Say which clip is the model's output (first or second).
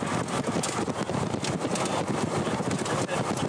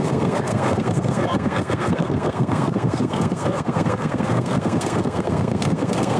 second